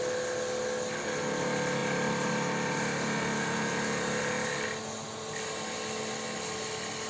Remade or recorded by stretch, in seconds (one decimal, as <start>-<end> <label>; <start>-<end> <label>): 0.0-7.1 recorded

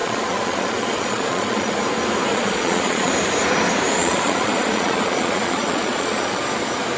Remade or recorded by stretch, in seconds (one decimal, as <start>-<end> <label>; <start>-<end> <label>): 0.0-1.7 remade; 1.7-2.3 recorded; 2.3-3.1 remade; 3.1-4.0 recorded; 4.0-6.4 remade; 6.4-7.0 recorded

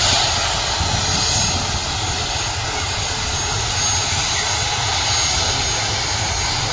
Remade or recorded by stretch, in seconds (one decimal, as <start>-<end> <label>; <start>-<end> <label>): 0.0-6.7 recorded

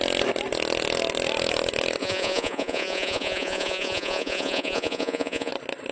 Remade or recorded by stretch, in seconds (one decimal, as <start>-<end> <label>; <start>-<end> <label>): 0.0-2.0 recorded; 2.0-5.5 remade; 5.5-5.9 recorded